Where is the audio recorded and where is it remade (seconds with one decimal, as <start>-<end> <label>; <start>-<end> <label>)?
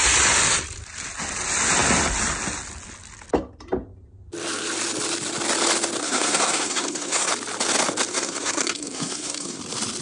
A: 0.0-6.0 recorded; 6.0-7.3 remade; 7.3-8.1 recorded; 8.1-9.6 remade; 9.6-10.0 recorded